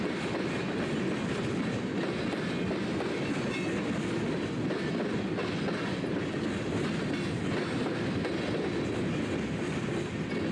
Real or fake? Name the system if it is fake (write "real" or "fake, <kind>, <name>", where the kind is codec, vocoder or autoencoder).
real